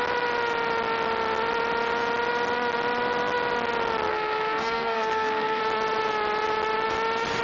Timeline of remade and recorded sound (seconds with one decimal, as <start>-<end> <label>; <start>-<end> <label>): 0.0-4.1 recorded; 4.1-5.6 remade; 5.6-7.4 recorded